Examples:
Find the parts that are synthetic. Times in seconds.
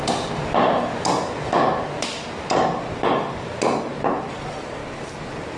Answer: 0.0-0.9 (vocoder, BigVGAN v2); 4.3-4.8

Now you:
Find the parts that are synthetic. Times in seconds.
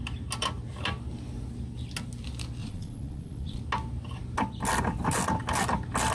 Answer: 2.6-3.6 (vocoder, Vocos)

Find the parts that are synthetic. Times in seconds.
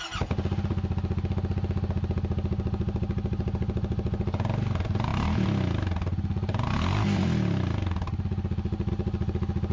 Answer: none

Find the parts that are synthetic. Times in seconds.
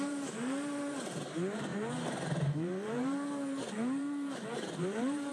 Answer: 0.0-5.3 (vocoder, BigVGAN v2)